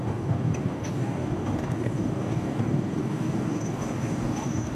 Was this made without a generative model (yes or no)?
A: no